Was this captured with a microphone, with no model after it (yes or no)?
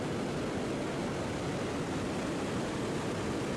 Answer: yes